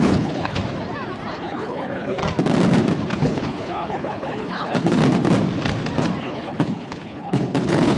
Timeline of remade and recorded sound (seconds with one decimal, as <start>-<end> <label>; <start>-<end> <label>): 0.0-0.6 remade; 0.6-1.3 recorded; 1.3-2.2 remade; 2.2-3.1 recorded; 3.1-5.0 remade; 5.0-6.2 recorded; 6.2-8.0 remade